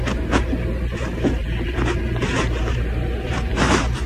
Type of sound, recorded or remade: remade